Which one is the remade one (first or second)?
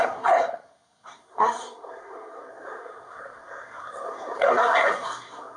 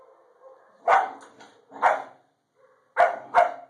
first